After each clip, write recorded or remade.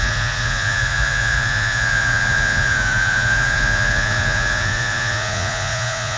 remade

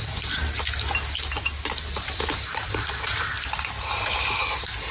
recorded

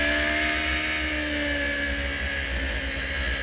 recorded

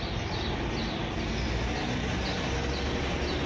recorded